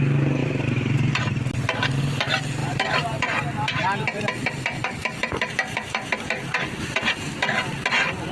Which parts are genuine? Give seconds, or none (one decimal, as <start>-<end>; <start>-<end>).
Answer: 0.0-0.4; 1.2-2.6; 7.3-8.3

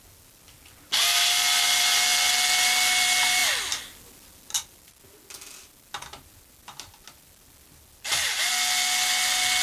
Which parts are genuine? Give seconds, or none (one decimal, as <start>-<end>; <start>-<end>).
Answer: 0.0-9.6

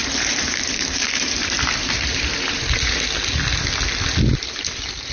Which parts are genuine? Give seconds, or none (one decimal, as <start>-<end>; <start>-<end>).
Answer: 3.1-5.1

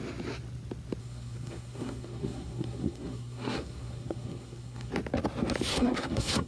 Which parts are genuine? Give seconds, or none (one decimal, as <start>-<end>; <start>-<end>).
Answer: 0.0-1.0; 4.9-5.7

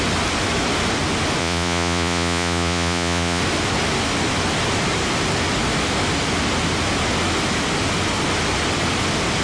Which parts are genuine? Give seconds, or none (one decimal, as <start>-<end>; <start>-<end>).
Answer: 0.0-1.4; 3.4-9.4

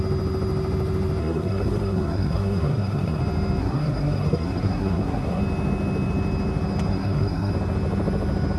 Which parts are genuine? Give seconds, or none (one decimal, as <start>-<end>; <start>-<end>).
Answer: 0.0-1.2; 3.2-3.6; 5.4-6.9; 7.5-8.6